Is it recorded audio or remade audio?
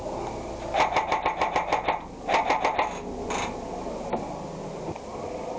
recorded